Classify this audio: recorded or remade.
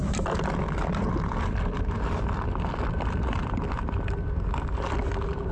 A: recorded